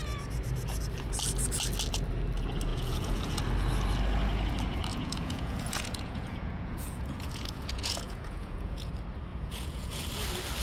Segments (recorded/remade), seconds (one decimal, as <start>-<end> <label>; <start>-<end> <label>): 0.0-2.7 recorded; 2.7-3.4 remade; 3.4-4.9 recorded; 4.9-8.9 remade; 8.9-9.3 recorded; 9.3-10.0 remade; 10.0-10.6 recorded